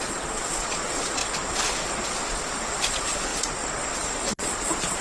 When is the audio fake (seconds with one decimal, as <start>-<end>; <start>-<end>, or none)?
0.0-1.2; 2.9-3.3; 4.3-5.0